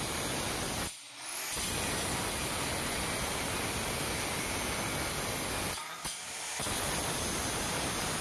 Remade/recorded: recorded